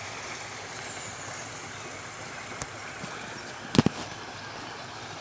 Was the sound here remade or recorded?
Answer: recorded